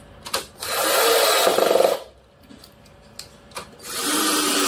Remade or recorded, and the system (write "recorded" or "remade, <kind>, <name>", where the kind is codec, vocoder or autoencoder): recorded